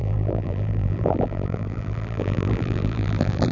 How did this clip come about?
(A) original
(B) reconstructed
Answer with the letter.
B